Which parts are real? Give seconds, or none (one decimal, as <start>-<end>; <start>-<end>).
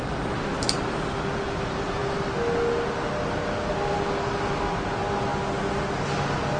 0.0-6.6